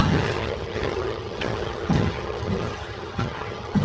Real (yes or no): no